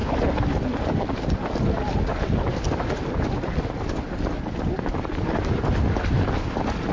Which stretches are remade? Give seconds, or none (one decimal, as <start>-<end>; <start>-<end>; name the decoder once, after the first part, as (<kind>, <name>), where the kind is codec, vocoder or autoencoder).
none